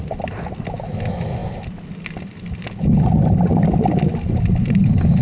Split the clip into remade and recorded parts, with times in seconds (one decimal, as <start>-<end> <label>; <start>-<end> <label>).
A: 0.0-5.2 recorded